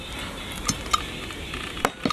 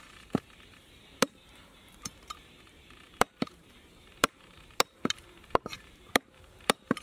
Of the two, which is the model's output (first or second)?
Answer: second